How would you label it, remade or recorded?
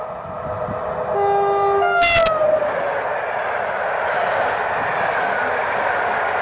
recorded